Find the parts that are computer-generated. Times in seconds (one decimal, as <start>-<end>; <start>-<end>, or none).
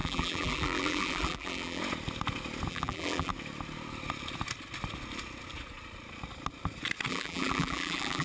0.0-1.8; 2.7-3.3; 7.1-8.2